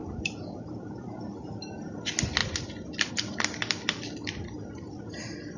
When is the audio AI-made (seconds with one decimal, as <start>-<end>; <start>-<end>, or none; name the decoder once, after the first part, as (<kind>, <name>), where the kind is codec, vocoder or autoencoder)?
0.0-1.5 (vocoder, BigVGAN v2); 2.4-3.1